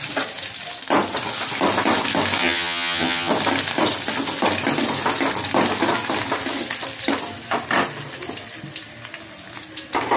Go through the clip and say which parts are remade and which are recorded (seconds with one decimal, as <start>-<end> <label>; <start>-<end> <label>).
0.0-2.4 recorded; 2.4-3.3 remade; 3.3-10.2 recorded